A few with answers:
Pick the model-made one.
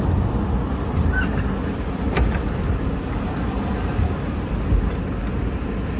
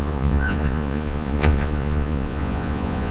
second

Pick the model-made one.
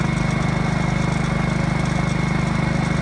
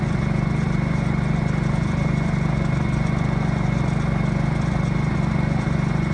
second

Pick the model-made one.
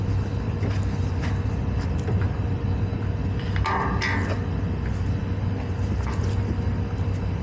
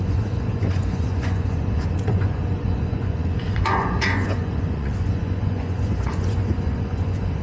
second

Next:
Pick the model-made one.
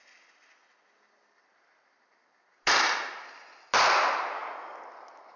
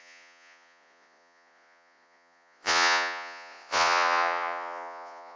second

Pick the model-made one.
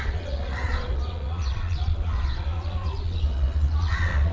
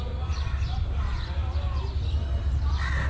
first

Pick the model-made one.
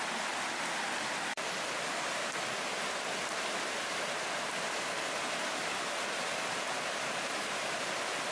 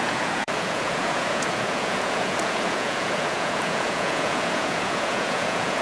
second